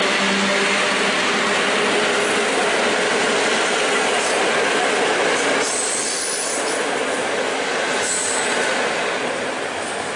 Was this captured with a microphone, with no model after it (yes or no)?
yes